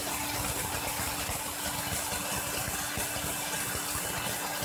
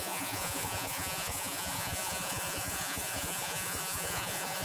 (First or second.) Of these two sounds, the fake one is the second